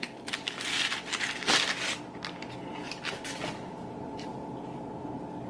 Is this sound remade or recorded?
recorded